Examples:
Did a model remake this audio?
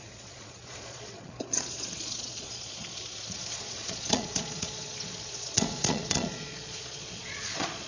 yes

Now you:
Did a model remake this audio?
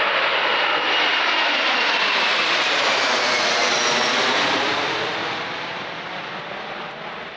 no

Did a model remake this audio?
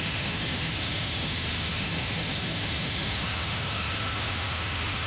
yes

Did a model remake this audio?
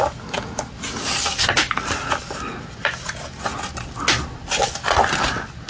no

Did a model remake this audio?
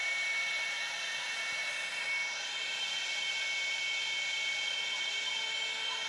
no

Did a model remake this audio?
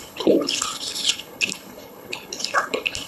yes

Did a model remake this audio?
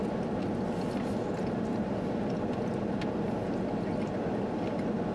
no